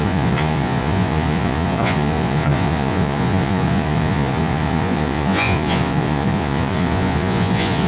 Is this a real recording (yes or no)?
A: no